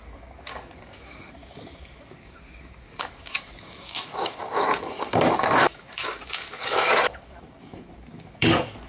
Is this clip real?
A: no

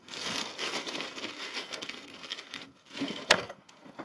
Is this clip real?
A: no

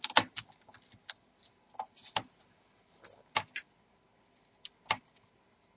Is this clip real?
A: yes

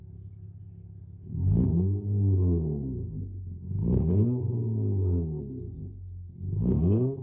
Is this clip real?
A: no